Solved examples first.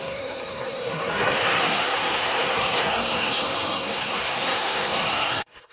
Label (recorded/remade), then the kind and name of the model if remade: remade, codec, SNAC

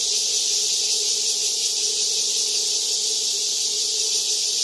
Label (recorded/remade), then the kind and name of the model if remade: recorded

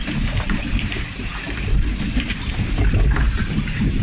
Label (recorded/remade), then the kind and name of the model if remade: remade, vocoder, BigVGAN v2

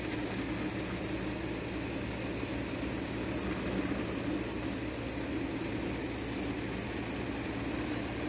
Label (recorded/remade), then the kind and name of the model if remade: recorded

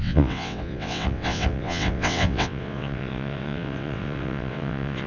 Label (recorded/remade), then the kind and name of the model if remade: remade, vocoder, WaveNeXt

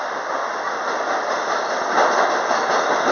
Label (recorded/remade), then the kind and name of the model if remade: recorded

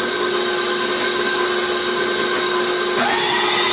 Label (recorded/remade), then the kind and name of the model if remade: recorded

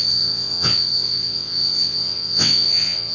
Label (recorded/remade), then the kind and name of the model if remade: remade, vocoder, WaveNeXt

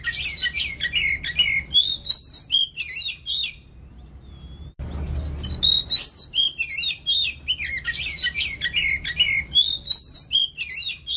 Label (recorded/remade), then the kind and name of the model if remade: recorded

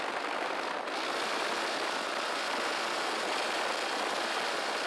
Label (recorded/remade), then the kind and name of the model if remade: recorded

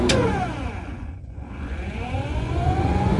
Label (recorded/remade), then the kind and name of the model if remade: remade, vocoder, Vocos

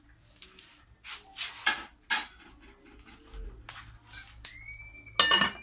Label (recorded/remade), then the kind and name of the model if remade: recorded